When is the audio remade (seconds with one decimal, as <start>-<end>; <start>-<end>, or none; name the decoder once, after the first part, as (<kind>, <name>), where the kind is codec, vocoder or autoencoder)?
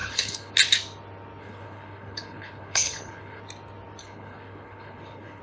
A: 0.0-0.5 (codec, HILCodec); 1.4-3.4; 4.0-5.4